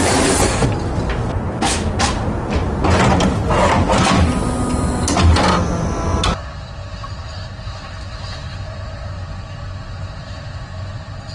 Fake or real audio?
real